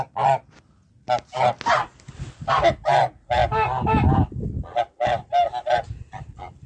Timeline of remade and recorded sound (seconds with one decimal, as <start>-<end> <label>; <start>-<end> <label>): 0.0-6.7 recorded